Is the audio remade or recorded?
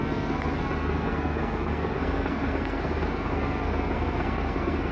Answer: remade